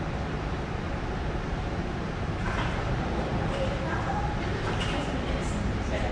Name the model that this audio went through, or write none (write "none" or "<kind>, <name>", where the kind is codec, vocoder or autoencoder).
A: vocoder, BigVGAN v2